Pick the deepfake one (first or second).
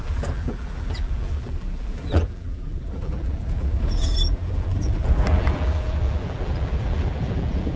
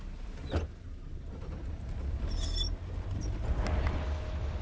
first